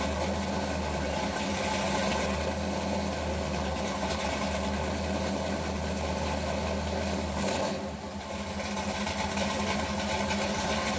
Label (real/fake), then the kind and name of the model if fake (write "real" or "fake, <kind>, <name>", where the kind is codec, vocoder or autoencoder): real